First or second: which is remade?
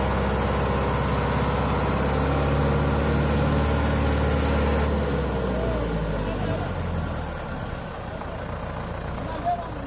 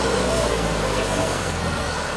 second